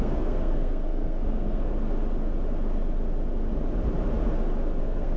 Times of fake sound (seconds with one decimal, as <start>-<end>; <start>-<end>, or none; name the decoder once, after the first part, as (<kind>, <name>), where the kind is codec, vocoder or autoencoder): 0.0-1.7 (codec, SNAC); 4.8-5.2